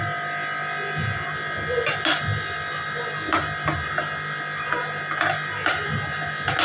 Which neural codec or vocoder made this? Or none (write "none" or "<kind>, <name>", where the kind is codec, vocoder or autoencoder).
none